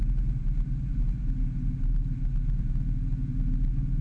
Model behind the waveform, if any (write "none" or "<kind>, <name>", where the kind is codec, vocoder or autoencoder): none